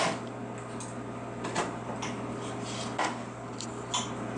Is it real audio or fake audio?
real